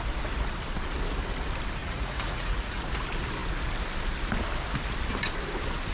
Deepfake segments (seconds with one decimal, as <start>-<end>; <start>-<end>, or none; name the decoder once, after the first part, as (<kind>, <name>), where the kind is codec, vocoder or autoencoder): 1.8-2.8 (vocoder, Vocos)